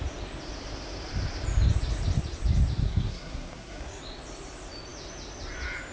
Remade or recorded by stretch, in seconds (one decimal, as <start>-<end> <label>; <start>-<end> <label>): 0.0-2.8 recorded; 2.8-4.0 remade; 4.0-5.9 recorded